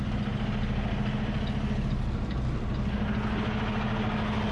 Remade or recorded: recorded